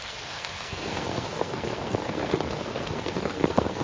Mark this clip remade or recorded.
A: remade